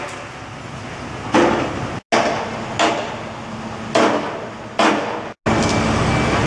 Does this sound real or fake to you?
real